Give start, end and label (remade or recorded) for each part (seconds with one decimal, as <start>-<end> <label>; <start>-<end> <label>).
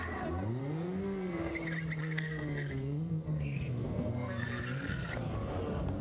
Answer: 0.0-0.6 recorded; 0.6-1.5 remade; 1.5-2.0 recorded; 2.0-5.1 remade; 5.1-6.0 recorded